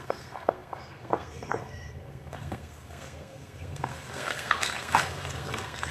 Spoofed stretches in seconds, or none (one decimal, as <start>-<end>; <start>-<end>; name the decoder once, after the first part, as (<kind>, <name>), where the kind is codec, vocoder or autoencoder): 0.0-5.9 (codec, SNAC)